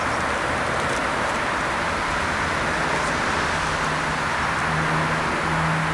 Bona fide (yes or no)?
yes